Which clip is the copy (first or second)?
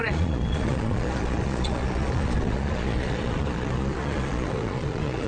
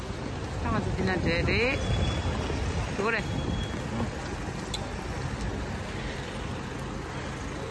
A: first